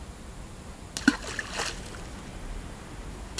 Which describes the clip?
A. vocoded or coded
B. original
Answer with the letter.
B